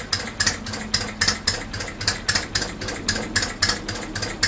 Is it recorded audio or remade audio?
recorded